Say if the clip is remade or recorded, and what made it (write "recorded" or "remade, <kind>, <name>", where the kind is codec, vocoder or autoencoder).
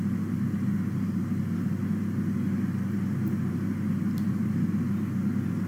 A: recorded